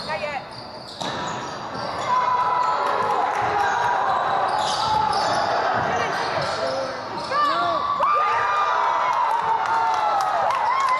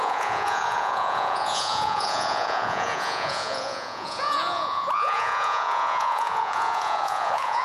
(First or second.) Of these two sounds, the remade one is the second